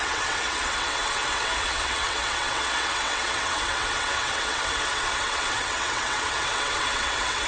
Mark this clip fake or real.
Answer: fake